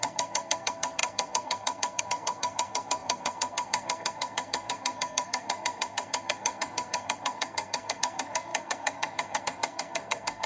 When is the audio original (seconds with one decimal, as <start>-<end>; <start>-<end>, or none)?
none